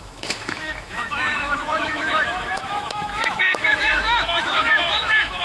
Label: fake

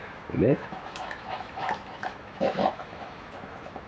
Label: fake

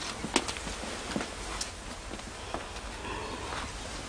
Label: real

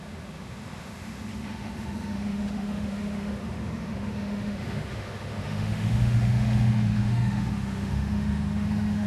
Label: fake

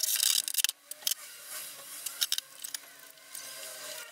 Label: real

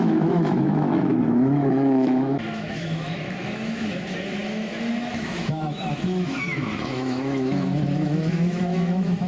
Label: fake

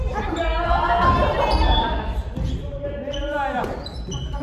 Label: real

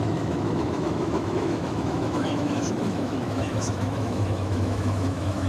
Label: fake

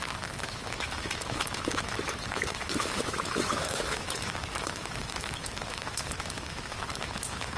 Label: fake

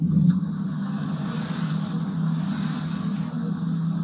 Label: real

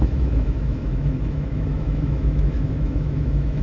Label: fake